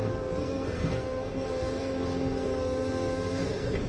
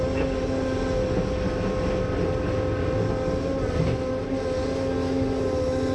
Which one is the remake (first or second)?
first